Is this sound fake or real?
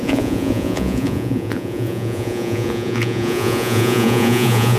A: fake